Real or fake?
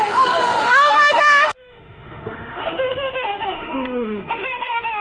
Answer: fake